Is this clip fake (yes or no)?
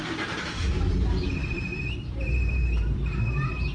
yes